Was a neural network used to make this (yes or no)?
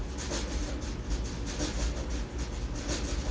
no